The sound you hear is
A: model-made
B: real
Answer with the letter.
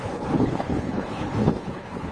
A